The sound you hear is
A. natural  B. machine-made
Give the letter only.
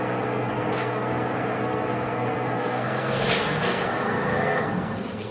B